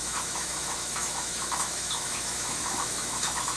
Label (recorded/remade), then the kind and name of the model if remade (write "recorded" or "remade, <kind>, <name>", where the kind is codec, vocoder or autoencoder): remade, autoencoder, DAC-VAE